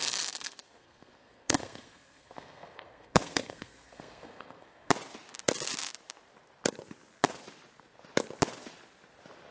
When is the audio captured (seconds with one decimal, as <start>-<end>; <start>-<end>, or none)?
4.9-9.5